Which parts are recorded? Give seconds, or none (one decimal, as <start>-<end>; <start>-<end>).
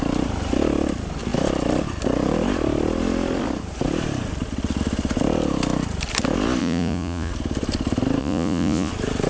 0.0-6.6; 7.3-8.2; 8.9-9.3